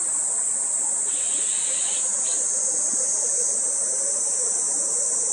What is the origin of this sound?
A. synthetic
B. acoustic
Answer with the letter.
B